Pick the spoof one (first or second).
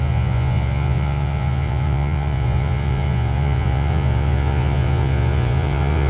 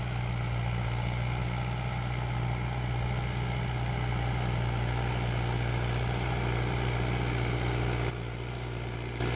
first